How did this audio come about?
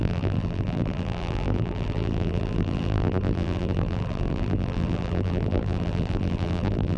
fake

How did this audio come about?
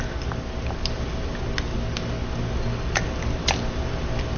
real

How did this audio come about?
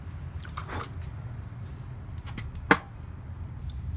real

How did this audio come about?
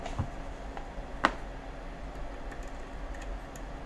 real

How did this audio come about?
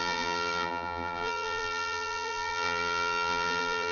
fake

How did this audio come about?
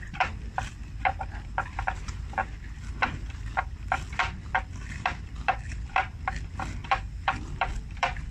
fake